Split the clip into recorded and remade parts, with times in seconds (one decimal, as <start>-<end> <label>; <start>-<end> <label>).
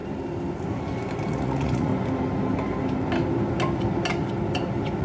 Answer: 0.0-1.3 recorded; 1.3-1.9 remade; 1.9-5.0 recorded